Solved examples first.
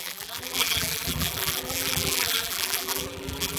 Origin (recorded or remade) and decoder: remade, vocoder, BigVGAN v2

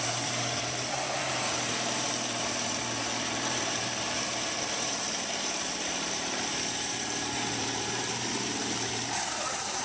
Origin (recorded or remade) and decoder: remade, vocoder, BigVGAN v2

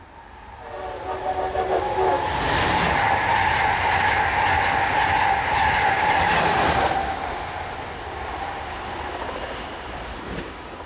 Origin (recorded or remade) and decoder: recorded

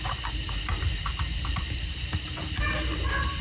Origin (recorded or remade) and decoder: remade, vocoder, BigVGAN v2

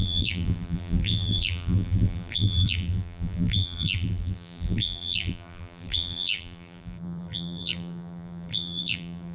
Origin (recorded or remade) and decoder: remade, vocoder, BigVGAN v2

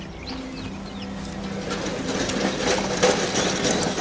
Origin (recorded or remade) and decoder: recorded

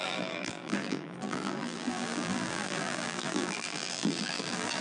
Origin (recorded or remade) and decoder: remade, vocoder, BigVGAN v2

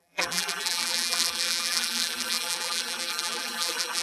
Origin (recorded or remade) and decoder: remade, vocoder, BigVGAN v2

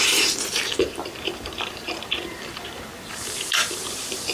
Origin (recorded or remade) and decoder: remade, vocoder, BigVGAN v2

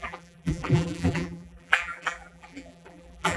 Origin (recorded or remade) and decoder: remade, vocoder, BigVGAN v2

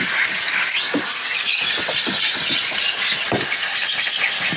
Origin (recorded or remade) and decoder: remade, vocoder, BigVGAN v2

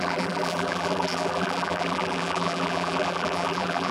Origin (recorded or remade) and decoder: remade, vocoder, BigVGAN v2